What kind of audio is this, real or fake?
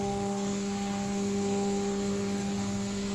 fake